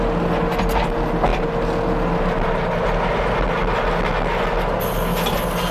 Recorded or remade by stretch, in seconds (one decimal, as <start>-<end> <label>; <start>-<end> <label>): 0.0-5.7 recorded